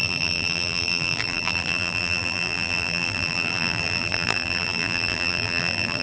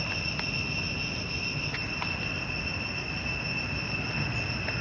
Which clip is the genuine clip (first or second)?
second